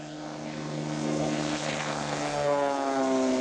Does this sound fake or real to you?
fake